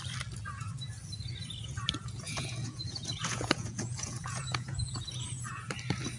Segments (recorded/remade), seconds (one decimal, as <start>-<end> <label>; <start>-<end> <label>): 0.0-2.0 recorded; 2.0-5.7 remade; 5.7-6.2 recorded